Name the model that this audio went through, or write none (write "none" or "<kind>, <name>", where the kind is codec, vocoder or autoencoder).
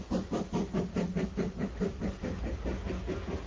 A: none